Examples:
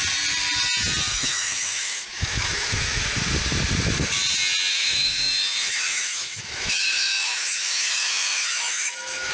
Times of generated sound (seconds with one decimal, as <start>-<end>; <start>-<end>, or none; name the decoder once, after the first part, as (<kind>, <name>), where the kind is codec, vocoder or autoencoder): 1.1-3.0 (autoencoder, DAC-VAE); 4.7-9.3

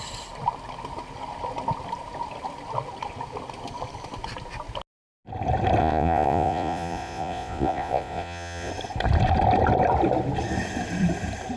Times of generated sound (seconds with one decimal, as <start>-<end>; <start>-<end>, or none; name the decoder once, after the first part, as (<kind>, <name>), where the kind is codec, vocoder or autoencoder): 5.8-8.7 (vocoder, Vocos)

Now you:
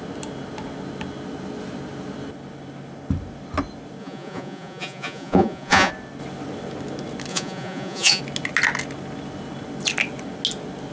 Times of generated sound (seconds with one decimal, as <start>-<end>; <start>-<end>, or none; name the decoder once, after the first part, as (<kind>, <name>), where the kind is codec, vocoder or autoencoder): 4.0-5.9 (vocoder, Vocos); 7.3-8.2

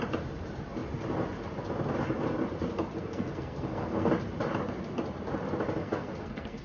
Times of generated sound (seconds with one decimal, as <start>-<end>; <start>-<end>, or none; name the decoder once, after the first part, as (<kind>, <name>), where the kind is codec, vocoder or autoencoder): 3.0-4.1 (codec, SNAC); 5.8-6.6

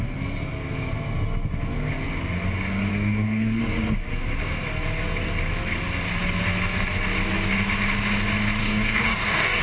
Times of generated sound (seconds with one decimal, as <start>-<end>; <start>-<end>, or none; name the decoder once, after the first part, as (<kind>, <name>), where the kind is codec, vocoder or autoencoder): 2.9-3.6 (codec, DAC); 8.6-9.6

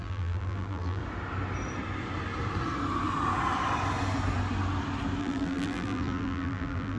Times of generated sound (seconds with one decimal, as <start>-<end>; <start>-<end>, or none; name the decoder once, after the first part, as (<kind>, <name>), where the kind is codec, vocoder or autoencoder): 0.0-1.0 (vocoder, BigVGAN v2); 5.2-7.0

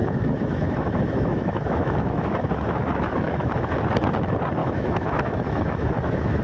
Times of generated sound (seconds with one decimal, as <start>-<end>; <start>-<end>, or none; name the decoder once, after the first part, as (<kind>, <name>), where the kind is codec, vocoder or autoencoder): 0.0-3.8 (autoencoder, DAC-VAE); 4.6-6.4